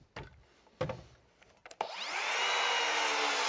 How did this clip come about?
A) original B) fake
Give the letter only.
A